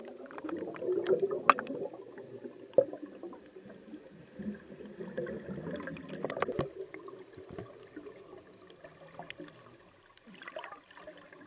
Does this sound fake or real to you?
real